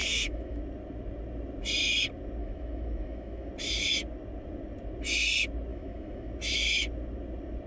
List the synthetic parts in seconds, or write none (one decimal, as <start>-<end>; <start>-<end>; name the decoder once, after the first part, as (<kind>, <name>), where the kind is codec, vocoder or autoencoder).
0.0-0.6 (autoencoder, DAC-VAE); 2.4-3.5; 5.7-6.3